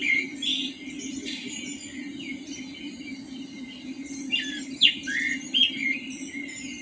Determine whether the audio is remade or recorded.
recorded